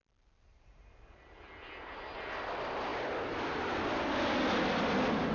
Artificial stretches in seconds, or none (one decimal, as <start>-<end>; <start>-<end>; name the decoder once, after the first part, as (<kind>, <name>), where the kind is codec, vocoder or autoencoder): none